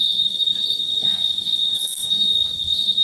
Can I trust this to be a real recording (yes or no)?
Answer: no